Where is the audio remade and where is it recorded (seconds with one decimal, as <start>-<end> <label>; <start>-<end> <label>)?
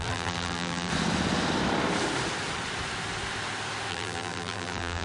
0.0-0.9 remade; 0.9-3.9 recorded; 3.9-5.0 remade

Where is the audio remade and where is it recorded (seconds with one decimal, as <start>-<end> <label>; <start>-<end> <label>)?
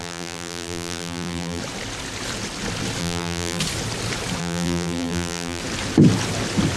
0.0-1.6 remade; 1.6-3.0 recorded; 3.0-3.6 remade; 3.6-4.4 recorded; 4.4-5.6 remade; 5.6-6.8 recorded